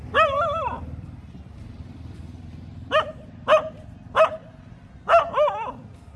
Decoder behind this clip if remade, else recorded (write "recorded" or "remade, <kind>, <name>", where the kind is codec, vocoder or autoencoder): remade, vocoder, BigVGAN v2